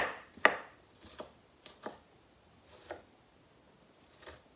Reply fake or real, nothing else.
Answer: real